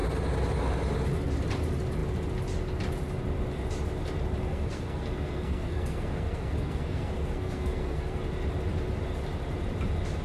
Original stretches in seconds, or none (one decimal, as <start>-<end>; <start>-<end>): 0.0-4.4; 8.2-10.2